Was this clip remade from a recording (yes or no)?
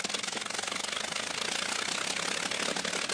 no